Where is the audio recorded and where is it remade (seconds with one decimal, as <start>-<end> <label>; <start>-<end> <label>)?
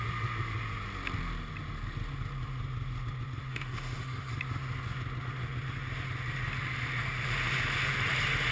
0.0-3.5 recorded; 3.5-4.3 remade; 4.3-8.5 recorded